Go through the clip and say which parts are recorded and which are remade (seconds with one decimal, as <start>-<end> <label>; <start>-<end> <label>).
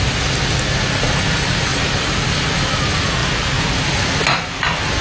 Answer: 0.0-1.7 recorded; 1.7-2.2 remade; 2.2-5.0 recorded